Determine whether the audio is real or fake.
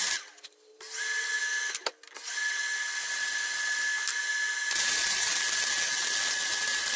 real